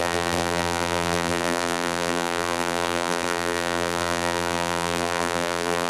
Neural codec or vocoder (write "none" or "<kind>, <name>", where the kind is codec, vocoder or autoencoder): vocoder, BigVGAN v2